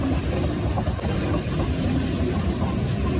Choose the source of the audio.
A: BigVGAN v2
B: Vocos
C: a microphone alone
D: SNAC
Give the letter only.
C